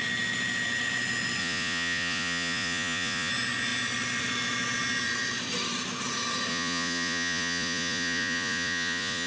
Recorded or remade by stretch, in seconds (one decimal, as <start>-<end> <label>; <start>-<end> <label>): 0.0-1.4 recorded; 1.4-3.3 remade; 3.3-6.5 recorded; 6.5-9.3 remade